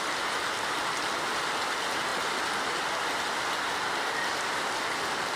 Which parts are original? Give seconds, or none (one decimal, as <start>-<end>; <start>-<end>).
0.0-5.4